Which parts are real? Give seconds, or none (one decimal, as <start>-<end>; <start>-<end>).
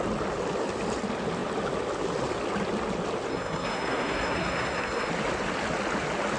0.0-3.3; 5.1-6.4